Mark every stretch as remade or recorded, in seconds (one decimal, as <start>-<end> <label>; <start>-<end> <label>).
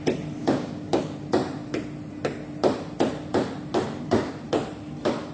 0.0-0.4 recorded; 0.4-1.0 remade; 1.0-5.3 recorded